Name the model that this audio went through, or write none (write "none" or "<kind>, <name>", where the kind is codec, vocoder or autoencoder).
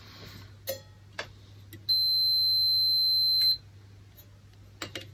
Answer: none